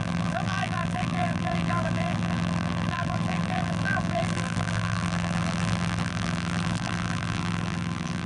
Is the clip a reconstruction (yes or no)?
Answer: yes